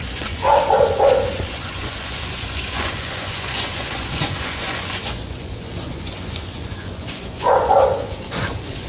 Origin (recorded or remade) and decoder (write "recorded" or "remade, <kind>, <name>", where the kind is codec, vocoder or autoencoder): remade, vocoder, Vocos